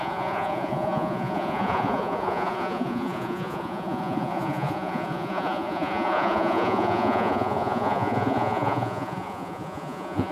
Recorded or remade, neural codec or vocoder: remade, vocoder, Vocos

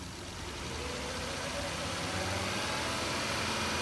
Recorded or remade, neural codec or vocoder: recorded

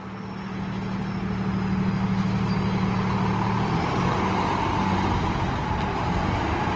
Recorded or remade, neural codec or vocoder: recorded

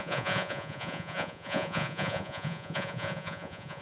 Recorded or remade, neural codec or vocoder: remade, vocoder, Vocos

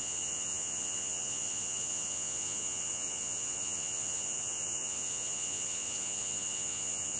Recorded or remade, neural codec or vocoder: remade, vocoder, Vocos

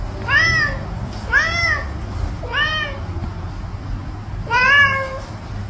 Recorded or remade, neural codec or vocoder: recorded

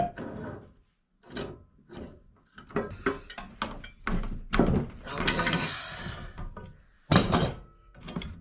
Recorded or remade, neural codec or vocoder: recorded